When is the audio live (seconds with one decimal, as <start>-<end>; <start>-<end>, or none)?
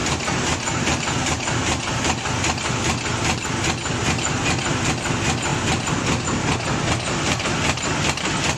2.0-4.0; 4.9-8.6